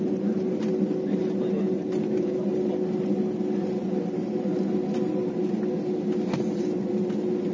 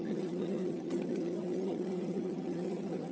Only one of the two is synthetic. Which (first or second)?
second